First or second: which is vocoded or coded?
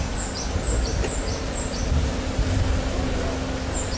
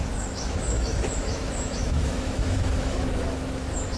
second